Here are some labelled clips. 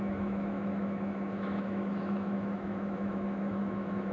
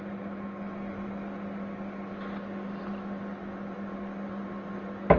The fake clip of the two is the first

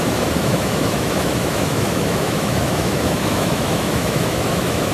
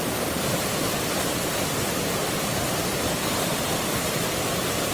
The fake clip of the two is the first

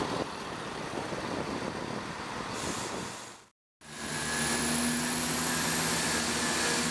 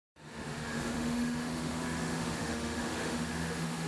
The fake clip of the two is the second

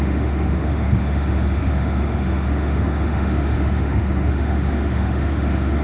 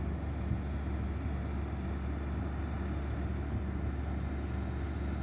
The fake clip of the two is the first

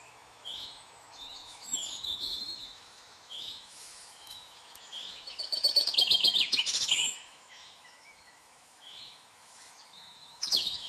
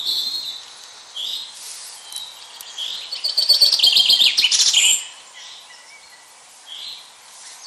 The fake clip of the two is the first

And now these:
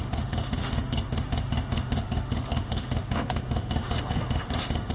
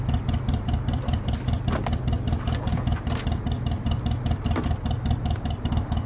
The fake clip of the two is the first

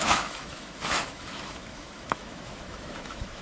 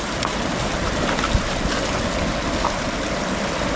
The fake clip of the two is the first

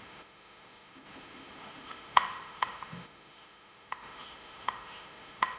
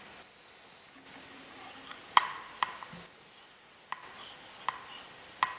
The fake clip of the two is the first